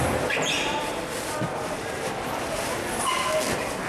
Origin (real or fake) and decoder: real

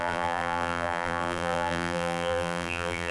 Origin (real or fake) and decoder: fake, vocoder, BigVGAN v2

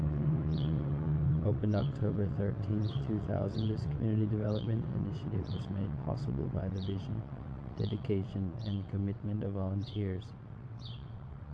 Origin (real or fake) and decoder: fake, vocoder, WaveNeXt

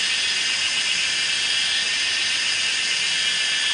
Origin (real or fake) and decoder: real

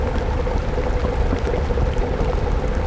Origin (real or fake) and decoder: real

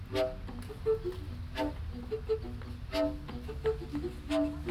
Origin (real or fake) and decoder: real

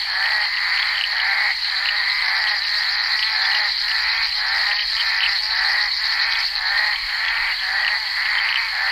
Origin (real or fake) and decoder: fake, vocoder, BigVGAN v2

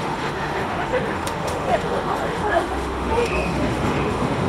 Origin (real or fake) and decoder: fake, autoencoder, DAC-VAE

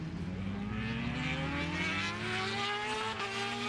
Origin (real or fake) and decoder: real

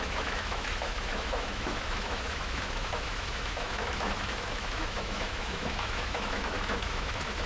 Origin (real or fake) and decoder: fake, autoencoder, DAC-VAE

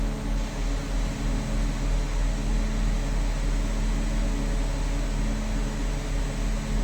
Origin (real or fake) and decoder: real